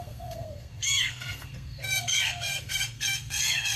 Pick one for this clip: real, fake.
fake